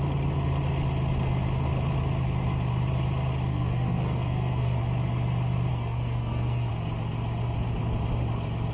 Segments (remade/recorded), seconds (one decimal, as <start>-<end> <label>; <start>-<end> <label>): 0.0-3.5 recorded; 3.5-4.8 remade; 4.8-5.7 recorded; 5.7-6.7 remade; 6.7-8.7 recorded